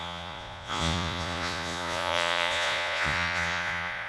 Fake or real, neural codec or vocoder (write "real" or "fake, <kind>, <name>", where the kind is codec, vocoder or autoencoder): fake, vocoder, Vocos